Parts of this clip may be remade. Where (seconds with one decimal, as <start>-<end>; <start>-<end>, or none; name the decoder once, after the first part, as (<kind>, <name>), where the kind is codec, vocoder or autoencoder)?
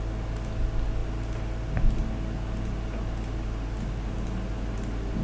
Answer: none